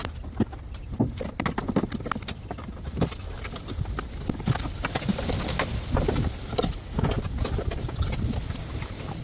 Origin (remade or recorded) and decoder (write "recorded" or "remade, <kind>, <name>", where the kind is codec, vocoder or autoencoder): recorded